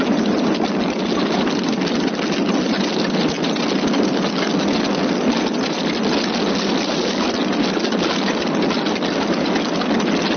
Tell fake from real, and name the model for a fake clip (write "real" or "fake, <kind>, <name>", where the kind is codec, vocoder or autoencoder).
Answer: real